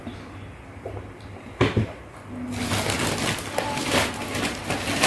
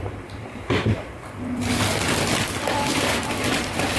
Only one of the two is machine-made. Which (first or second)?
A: second